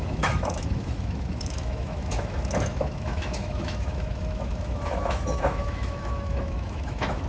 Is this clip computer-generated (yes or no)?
yes